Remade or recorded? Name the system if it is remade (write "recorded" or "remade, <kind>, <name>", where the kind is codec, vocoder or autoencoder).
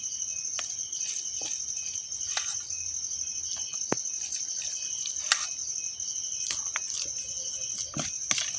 recorded